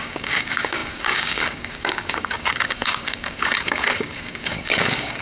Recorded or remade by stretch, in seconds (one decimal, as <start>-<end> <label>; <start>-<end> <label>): 0.0-5.2 remade